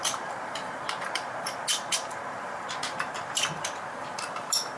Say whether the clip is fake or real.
fake